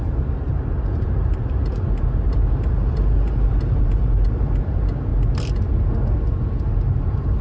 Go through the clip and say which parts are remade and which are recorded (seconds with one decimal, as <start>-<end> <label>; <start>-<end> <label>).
0.0-5.1 remade; 5.1-7.0 recorded; 7.0-7.4 remade